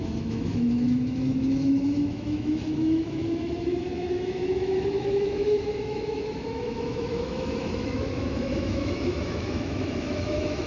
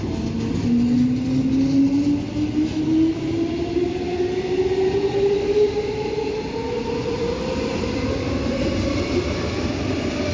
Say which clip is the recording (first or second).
second